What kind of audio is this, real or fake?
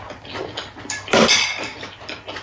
fake